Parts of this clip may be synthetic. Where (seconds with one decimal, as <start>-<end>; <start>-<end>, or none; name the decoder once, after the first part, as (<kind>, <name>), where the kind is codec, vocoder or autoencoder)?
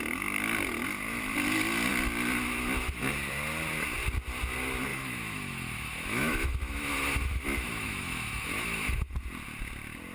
4.9-9.1 (autoencoder, DAC-VAE)